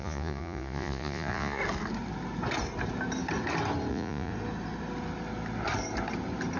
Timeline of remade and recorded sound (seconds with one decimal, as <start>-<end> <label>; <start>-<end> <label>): 0.0-1.6 remade; 1.6-3.9 recorded; 3.9-4.3 remade; 4.3-6.6 recorded